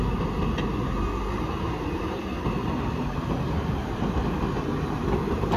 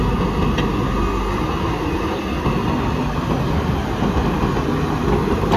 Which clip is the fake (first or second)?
first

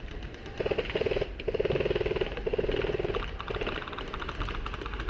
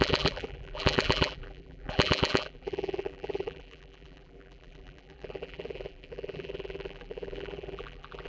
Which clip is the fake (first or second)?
second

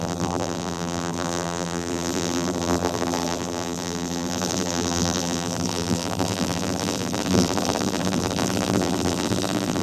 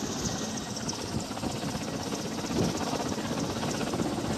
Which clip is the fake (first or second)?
first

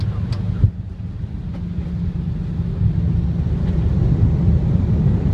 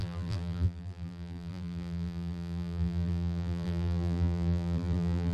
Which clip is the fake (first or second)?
second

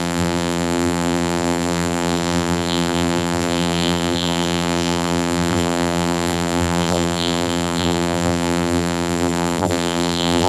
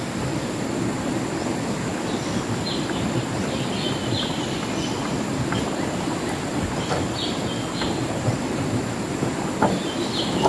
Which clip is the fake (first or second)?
first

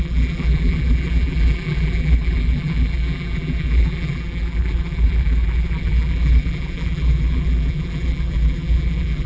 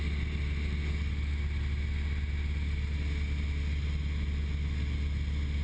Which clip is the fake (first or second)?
first